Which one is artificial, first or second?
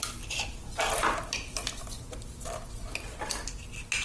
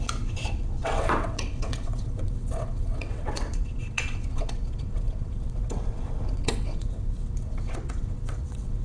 second